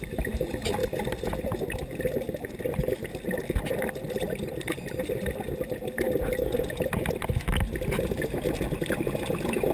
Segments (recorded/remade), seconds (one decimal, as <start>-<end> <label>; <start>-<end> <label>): 0.0-9.7 recorded